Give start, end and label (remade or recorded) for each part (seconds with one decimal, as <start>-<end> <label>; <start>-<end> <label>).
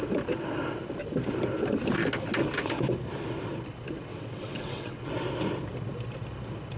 0.0-4.1 recorded; 4.1-5.1 remade; 5.1-6.8 recorded